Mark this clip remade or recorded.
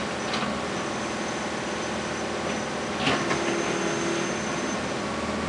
recorded